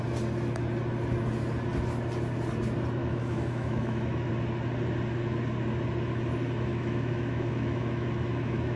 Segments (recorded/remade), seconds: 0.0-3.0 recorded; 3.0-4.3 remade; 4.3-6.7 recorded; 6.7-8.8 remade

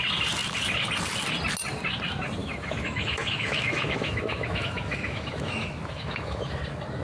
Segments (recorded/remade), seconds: 0.0-2.4 recorded; 2.4-6.6 remade; 6.6-7.0 recorded

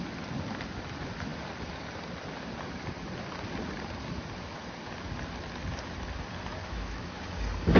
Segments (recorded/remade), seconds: 0.0-6.6 recorded; 6.6-7.2 remade; 7.2-7.8 recorded